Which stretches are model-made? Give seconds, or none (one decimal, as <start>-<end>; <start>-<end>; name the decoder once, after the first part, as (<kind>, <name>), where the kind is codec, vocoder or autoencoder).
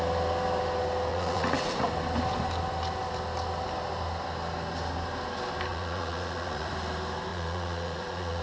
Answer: 1.1-1.9 (vocoder, Vocos); 5.7-6.7; 7.3-8.4